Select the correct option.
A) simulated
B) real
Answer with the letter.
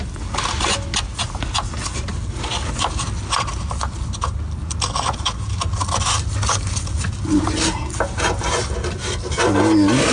B